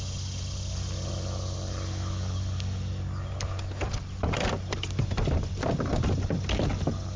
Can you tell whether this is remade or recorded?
recorded